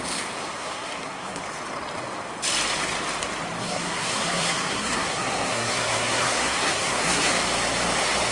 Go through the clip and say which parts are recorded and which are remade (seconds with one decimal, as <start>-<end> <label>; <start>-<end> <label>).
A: 0.0-0.6 recorded; 0.6-1.4 remade; 1.4-3.6 recorded; 3.6-7.3 remade; 7.3-8.3 recorded